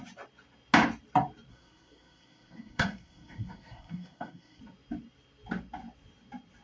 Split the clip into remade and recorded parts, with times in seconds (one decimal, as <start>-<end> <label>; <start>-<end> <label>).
0.0-1.5 recorded; 1.5-4.6 remade; 4.6-6.6 recorded